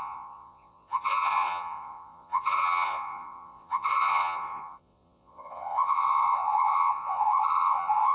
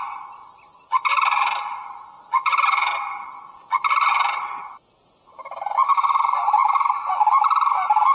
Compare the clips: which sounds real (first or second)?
second